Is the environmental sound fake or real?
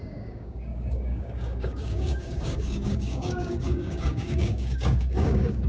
fake